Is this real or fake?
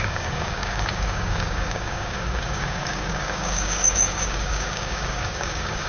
fake